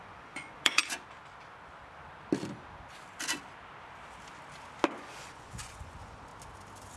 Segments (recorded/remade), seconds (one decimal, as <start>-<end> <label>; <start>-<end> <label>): 0.0-0.8 remade; 0.8-5.0 recorded; 5.0-6.3 remade; 6.3-7.0 recorded